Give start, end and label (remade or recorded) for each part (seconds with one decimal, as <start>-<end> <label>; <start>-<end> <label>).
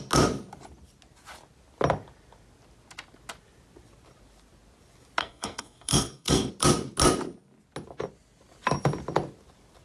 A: 0.0-5.2 recorded; 5.2-6.5 remade; 6.5-9.8 recorded